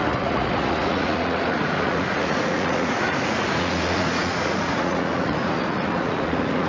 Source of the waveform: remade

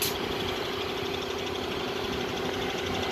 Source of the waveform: recorded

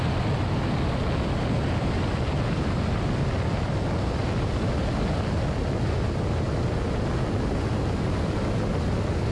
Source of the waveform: recorded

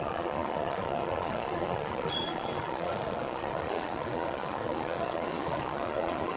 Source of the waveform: remade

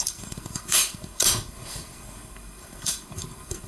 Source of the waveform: remade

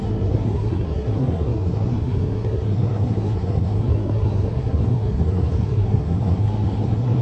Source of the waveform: remade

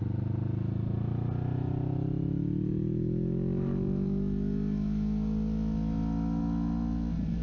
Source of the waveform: recorded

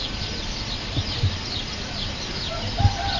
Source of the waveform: recorded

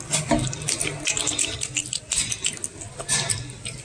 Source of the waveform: recorded